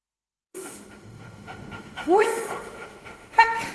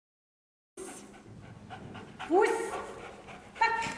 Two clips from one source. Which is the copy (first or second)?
first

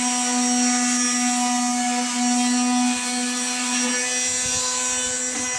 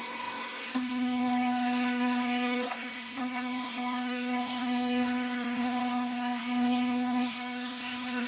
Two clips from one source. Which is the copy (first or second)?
second